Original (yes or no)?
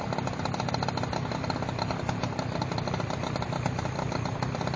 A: no